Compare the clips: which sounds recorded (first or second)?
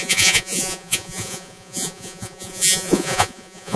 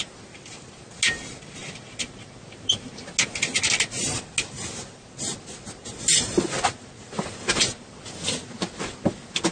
second